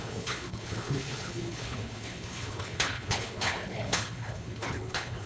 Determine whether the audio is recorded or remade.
remade